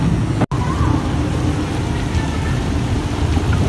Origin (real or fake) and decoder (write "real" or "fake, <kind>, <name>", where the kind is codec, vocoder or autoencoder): real